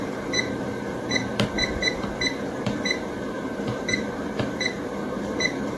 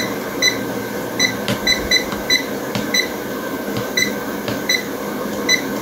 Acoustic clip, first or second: second